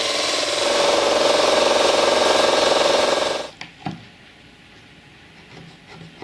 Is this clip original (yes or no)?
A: yes